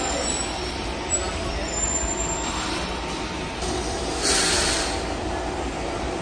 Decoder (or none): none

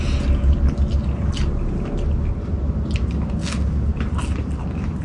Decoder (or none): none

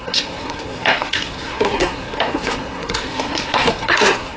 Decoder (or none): codec, SNAC